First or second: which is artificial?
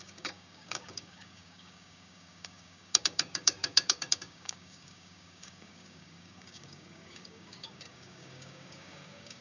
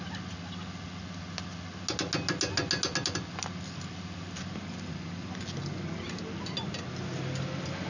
first